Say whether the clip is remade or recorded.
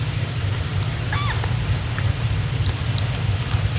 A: recorded